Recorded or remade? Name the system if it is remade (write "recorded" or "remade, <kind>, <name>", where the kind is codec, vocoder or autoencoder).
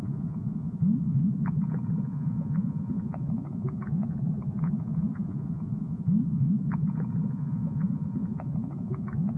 remade, vocoder, Vocos